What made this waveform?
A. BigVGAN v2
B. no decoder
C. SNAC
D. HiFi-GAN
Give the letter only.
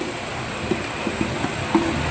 B